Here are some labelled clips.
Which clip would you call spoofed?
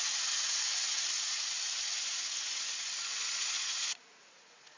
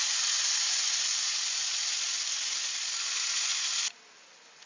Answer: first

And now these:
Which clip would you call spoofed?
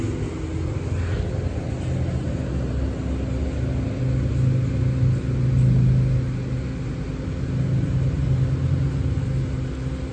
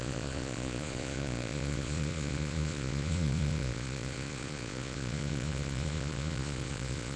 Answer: second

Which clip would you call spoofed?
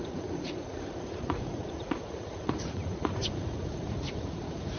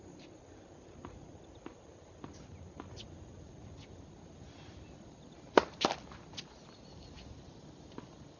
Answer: first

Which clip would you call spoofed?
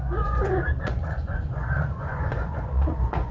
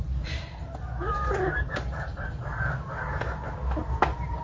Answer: first